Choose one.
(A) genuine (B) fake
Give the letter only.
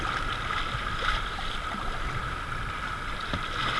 A